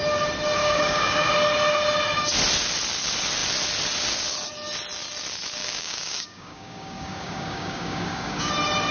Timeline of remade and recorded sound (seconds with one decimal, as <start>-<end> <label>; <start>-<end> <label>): 0.0-0.6 recorded; 0.6-1.3 remade; 1.3-5.6 recorded; 5.6-8.5 remade; 8.5-8.9 recorded